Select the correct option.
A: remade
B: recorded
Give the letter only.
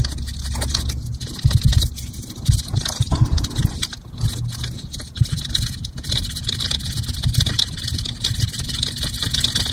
B